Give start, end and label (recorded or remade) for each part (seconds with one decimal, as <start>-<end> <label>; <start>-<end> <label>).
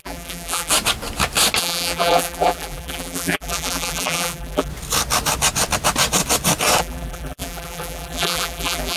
0.0-0.7 remade; 0.7-1.6 recorded; 1.6-4.7 remade; 4.7-6.8 recorded; 6.8-9.0 remade